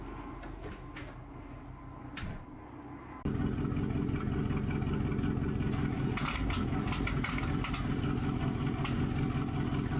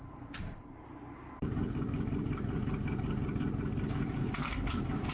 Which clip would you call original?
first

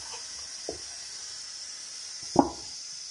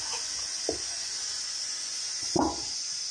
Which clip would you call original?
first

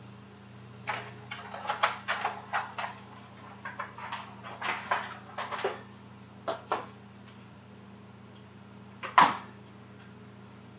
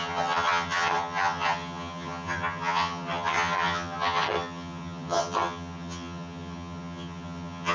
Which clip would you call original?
first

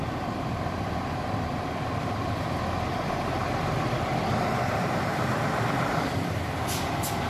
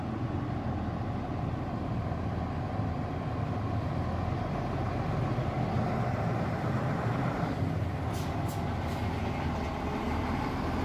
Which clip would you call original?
second